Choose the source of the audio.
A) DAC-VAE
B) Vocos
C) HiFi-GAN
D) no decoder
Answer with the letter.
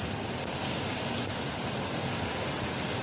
D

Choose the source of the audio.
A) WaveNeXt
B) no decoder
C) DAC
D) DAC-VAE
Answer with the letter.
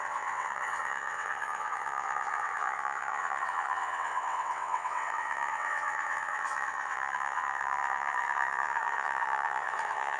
A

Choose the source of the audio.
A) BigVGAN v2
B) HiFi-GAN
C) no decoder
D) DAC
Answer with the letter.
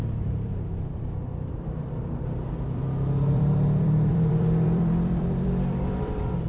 A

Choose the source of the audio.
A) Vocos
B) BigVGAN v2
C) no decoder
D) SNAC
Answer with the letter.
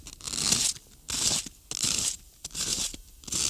C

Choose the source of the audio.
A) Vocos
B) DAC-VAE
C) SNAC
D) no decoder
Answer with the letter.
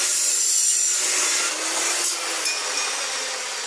D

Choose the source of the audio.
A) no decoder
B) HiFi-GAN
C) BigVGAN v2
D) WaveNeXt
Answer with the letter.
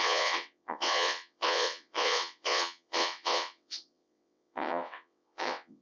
D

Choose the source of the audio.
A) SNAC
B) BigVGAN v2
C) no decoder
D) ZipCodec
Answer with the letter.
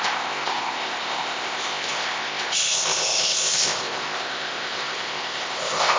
D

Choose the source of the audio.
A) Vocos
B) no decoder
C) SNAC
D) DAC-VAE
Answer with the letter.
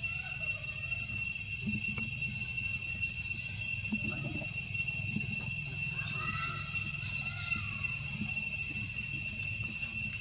B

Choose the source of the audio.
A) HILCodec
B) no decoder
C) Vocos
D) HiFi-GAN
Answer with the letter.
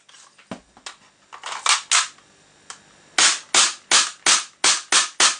B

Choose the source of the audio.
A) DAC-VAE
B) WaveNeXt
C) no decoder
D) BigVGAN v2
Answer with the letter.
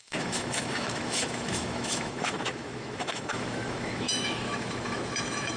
A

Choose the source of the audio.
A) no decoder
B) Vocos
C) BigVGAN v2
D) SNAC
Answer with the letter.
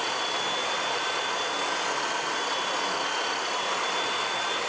A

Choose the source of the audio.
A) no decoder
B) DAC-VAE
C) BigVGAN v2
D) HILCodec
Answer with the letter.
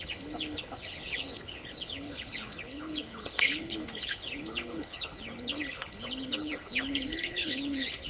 D